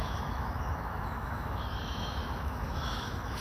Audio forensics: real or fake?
fake